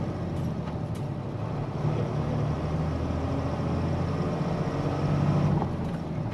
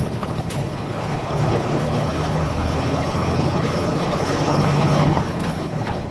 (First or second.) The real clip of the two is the first